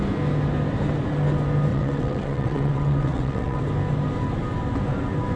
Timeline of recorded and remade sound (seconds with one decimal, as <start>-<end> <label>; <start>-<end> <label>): 0.0-1.7 recorded; 1.7-3.6 remade; 3.6-5.4 recorded